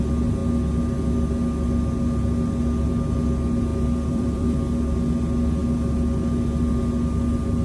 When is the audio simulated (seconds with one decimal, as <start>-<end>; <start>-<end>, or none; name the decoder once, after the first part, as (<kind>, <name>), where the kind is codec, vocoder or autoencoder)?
3.7-4.6 (vocoder, BigVGAN v2)